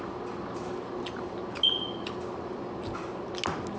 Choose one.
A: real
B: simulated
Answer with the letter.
A